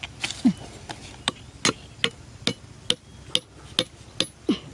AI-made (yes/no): no